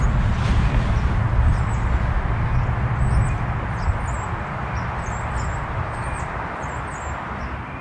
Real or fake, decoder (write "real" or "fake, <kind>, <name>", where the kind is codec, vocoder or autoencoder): real